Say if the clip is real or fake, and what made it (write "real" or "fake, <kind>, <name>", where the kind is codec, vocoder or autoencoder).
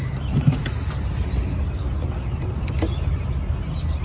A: real